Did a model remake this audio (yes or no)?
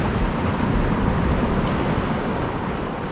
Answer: no